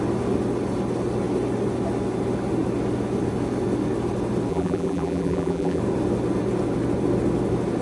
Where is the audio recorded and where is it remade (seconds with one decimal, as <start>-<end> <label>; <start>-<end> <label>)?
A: 0.0-4.5 recorded; 4.5-5.8 remade; 5.8-7.8 recorded